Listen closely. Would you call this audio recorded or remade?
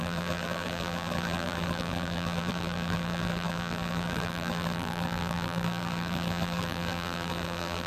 remade